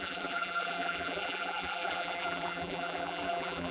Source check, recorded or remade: remade